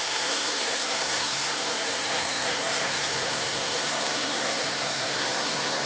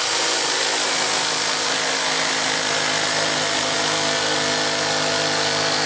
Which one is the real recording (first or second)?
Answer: second